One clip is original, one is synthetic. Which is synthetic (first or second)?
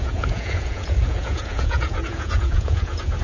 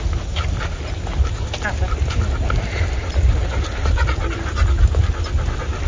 first